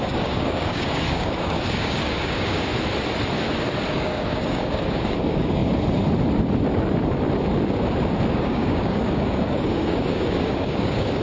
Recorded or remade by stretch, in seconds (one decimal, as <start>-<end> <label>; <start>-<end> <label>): 0.0-2.7 remade; 2.7-3.9 recorded; 3.9-5.6 remade; 5.6-8.3 recorded; 8.3-11.2 remade